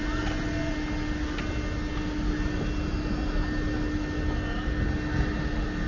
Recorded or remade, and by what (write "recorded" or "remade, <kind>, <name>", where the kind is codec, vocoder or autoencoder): recorded